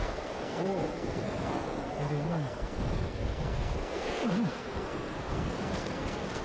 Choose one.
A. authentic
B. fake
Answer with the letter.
B